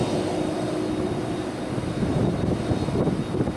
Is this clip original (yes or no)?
yes